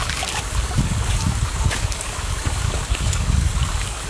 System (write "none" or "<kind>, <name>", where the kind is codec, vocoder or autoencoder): codec, DAC